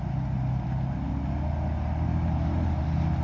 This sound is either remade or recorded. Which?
recorded